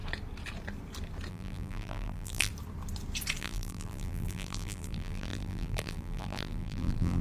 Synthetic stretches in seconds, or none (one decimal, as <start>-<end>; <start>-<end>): 1.3-2.5; 3.4-7.2